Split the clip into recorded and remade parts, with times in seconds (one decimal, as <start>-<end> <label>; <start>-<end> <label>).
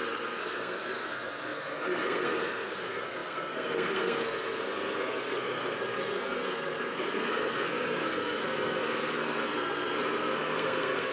0.0-11.1 remade